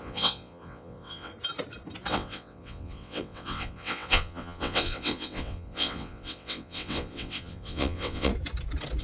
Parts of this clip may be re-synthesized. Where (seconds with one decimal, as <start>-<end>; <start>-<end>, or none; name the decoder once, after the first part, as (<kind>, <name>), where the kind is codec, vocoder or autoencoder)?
0.0-1.3 (vocoder, WaveNeXt); 2.1-8.3